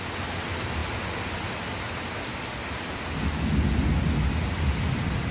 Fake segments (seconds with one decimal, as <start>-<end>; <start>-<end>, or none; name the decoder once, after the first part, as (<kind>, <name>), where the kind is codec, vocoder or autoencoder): none